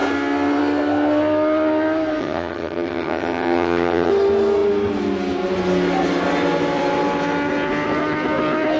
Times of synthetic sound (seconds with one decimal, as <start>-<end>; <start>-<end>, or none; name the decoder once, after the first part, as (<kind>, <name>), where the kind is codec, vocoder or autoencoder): 2.2-4.1 (vocoder, HiFi-GAN)